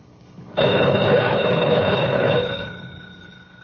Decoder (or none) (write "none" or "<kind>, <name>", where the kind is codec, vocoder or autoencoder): codec, HILCodec